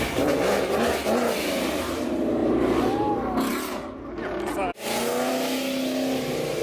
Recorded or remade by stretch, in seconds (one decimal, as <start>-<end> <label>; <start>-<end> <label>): 0.0-2.4 recorded; 2.4-3.1 remade; 3.1-6.6 recorded